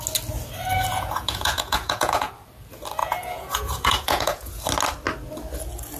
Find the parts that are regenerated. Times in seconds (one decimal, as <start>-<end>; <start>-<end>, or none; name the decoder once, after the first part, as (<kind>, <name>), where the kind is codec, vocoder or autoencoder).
0.9-2.3 (vocoder, Vocos); 3.0-4.6